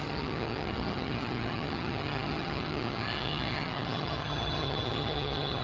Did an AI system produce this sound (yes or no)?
yes